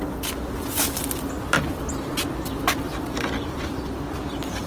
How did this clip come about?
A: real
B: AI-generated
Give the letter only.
A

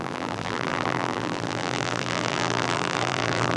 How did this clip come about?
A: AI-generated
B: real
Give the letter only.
A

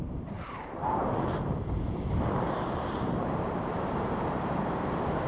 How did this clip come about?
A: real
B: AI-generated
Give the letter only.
B